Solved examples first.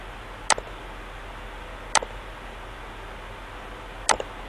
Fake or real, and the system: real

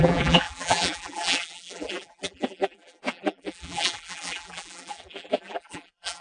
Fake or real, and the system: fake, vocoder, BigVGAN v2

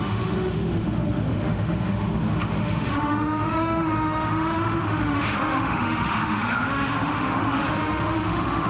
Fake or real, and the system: fake, autoencoder, DAC-VAE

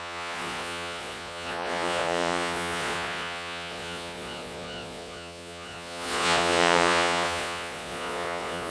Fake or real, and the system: fake, vocoder, Vocos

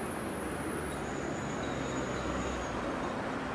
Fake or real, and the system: real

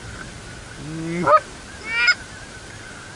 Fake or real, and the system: real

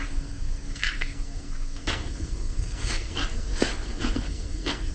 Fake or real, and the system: fake, codec, SNAC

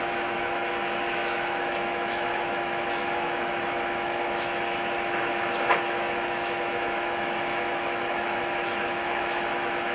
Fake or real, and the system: fake, autoencoder, DAC-VAE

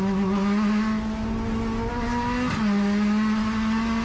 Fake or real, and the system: real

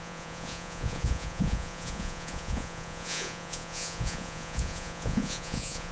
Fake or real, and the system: fake, vocoder, Vocos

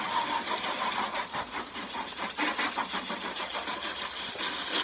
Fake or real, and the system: real